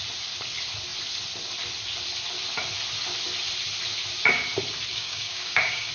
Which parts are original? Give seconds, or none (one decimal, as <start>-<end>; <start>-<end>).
0.0-4.9